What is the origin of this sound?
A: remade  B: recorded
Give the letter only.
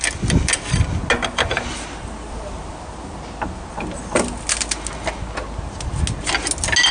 B